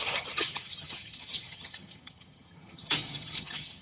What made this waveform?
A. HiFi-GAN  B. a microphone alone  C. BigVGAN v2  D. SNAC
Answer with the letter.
A